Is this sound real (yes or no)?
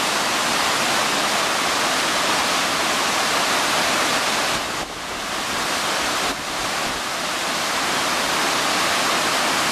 yes